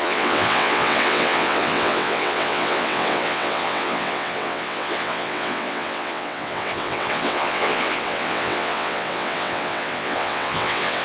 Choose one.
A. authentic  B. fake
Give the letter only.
B